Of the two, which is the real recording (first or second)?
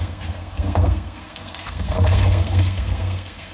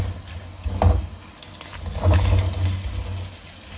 second